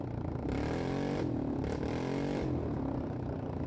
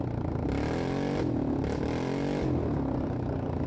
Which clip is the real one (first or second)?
second